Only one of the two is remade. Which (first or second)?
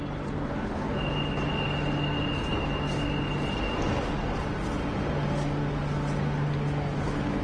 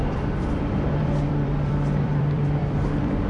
second